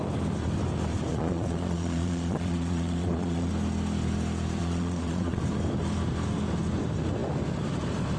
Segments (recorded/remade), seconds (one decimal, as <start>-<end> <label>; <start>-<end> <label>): 0.0-1.1 recorded; 1.1-3.5 remade; 3.5-4.6 recorded; 4.6-5.4 remade; 5.4-8.2 recorded